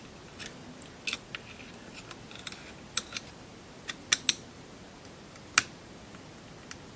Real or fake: real